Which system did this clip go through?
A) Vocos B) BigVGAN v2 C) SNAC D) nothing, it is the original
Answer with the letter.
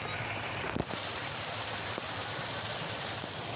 D